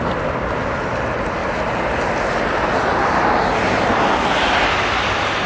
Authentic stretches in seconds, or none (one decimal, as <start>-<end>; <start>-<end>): 0.0-5.5